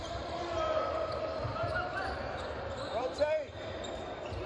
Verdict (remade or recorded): remade